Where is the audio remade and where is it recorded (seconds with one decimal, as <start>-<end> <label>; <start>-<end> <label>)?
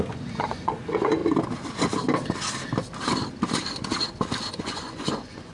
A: 0.0-1.2 remade; 1.2-4.5 recorded; 4.5-5.5 remade